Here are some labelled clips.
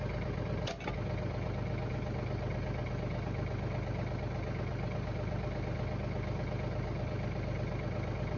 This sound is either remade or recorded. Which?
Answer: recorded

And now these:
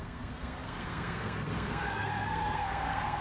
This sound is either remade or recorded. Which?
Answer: remade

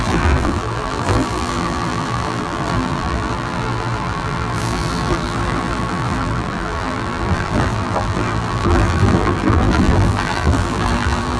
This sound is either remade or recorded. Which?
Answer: remade